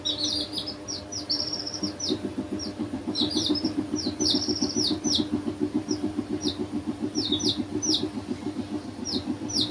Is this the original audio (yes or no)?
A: no